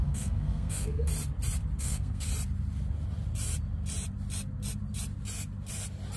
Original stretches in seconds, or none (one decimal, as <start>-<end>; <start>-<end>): 1.1-1.8; 2.3-6.2